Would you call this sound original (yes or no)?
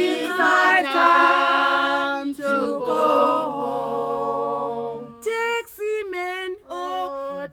no